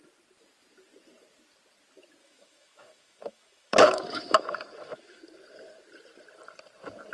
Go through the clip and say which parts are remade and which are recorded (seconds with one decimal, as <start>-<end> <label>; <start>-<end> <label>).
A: 0.0-2.2 recorded; 2.2-5.2 remade; 5.2-7.1 recorded

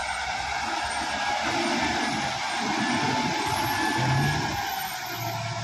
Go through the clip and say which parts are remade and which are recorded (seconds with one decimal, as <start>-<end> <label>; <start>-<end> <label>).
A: 0.0-5.6 recorded

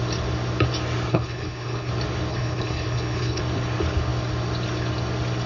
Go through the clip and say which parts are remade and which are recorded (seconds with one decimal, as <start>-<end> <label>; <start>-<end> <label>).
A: 0.0-1.1 recorded; 1.1-1.9 remade; 1.9-2.3 recorded; 2.3-3.4 remade; 3.4-5.5 recorded

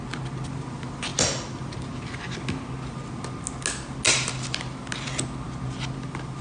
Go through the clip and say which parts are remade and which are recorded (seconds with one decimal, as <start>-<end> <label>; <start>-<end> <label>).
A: 0.0-6.4 recorded

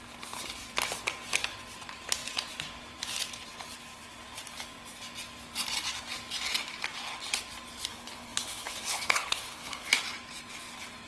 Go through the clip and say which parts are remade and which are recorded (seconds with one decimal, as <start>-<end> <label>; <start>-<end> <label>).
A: 0.0-7.9 recorded; 7.9-9.9 remade; 9.9-11.1 recorded

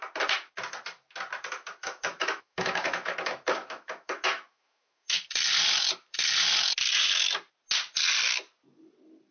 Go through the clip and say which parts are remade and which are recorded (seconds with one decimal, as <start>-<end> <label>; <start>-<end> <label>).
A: 0.0-1.8 recorded; 1.8-5.2 remade; 5.2-9.3 recorded